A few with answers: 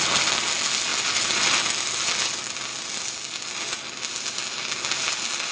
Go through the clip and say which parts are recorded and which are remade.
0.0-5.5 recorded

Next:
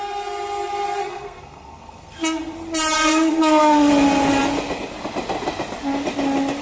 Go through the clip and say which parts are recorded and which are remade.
0.0-1.0 recorded; 1.0-2.4 remade; 2.4-3.0 recorded; 3.0-3.9 remade; 3.9-6.6 recorded

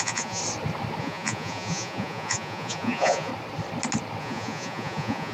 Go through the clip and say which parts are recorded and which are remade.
0.0-0.4 remade; 0.4-1.0 recorded; 1.0-3.3 remade; 3.3-4.2 recorded; 4.2-5.3 remade

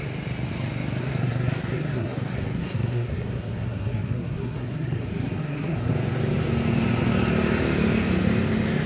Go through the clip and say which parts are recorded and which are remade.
0.0-1.0 recorded; 1.0-5.9 remade; 5.9-8.9 recorded